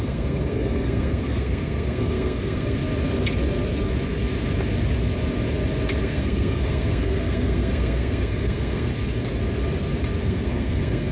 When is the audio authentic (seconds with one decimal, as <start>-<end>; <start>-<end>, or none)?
2.8-6.0; 8.9-10.2